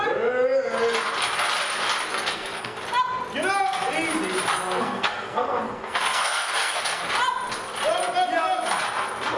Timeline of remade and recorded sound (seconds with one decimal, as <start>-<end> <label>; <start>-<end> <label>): 0.0-2.1 recorded; 2.1-2.8 remade; 2.8-4.5 recorded; 4.5-7.1 remade; 7.1-9.4 recorded